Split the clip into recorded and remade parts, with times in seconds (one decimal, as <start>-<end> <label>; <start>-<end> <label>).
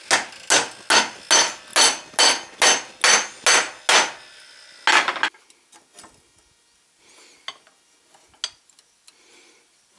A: 0.0-10.0 recorded